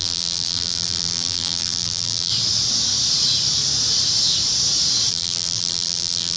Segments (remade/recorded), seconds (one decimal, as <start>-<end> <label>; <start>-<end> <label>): 0.0-2.3 remade; 2.3-5.1 recorded; 5.1-6.4 remade